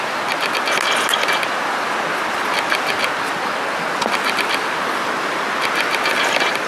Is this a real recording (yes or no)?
yes